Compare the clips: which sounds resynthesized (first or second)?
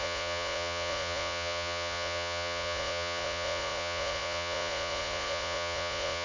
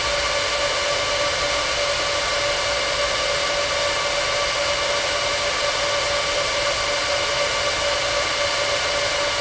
first